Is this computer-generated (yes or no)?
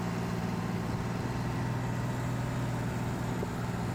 no